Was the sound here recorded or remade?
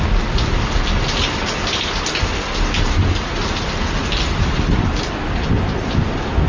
recorded